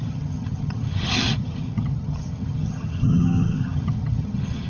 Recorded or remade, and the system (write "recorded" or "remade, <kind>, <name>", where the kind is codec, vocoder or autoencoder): remade, vocoder, HiFi-GAN